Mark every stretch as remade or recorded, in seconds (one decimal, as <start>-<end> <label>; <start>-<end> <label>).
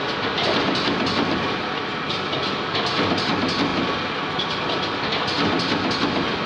0.0-6.5 recorded